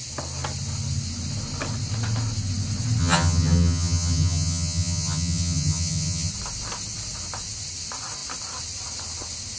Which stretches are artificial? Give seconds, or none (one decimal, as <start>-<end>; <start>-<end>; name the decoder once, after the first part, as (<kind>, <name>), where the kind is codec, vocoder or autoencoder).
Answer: 3.0-6.3 (vocoder, HiFi-GAN)